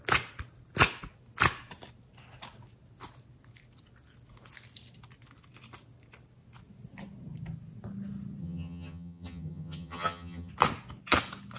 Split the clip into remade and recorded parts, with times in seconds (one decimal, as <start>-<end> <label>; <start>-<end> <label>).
0.0-8.4 recorded; 8.4-10.5 remade; 10.5-11.6 recorded